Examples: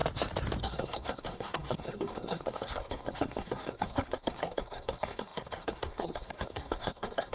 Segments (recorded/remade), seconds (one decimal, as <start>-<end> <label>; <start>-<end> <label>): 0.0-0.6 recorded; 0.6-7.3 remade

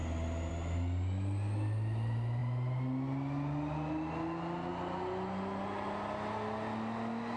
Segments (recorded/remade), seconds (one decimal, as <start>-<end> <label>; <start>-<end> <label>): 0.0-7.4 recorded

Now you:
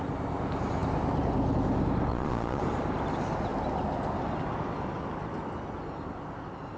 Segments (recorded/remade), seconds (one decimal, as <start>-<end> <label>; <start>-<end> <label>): 0.0-2.1 recorded; 2.1-2.6 remade; 2.6-6.8 recorded